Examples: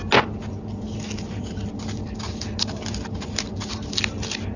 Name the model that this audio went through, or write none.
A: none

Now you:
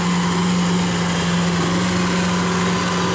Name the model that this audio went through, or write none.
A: none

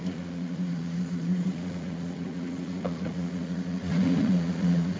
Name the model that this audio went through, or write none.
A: vocoder, Vocos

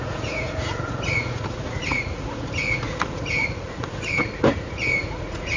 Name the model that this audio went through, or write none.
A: vocoder, Vocos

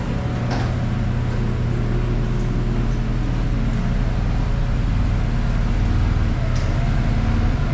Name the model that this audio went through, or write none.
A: none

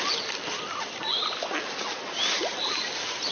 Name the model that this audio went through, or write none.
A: none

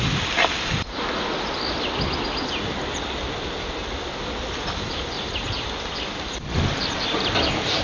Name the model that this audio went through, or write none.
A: none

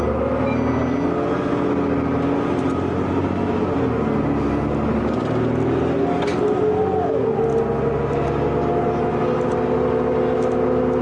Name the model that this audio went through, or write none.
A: none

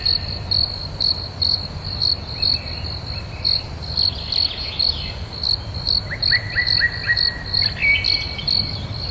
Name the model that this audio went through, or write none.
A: none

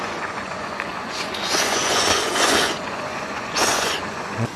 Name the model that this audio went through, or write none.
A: vocoder, Vocos